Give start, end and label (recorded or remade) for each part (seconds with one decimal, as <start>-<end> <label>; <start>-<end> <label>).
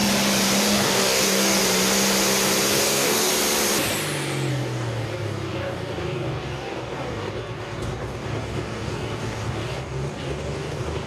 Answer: 0.0-0.6 recorded; 0.6-1.6 remade; 1.6-2.7 recorded; 2.7-3.3 remade; 3.3-4.5 recorded; 4.5-11.1 remade